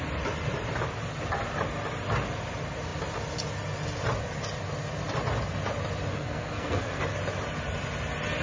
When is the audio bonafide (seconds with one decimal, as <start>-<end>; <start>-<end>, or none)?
0.0-6.1; 7.0-8.4